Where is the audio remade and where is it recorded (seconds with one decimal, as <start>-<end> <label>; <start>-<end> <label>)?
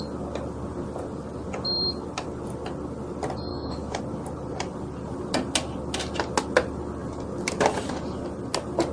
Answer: 0.0-3.5 recorded; 3.5-4.0 remade; 4.0-8.9 recorded